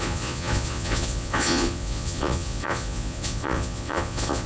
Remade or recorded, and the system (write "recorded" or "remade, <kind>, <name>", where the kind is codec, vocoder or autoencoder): remade, vocoder, Vocos